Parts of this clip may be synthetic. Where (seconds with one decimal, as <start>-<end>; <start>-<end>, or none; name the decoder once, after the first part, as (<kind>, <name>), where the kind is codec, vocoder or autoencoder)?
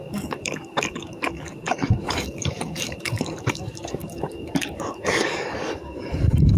0.0-6.6 (codec, DAC)